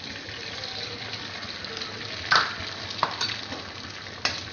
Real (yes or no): yes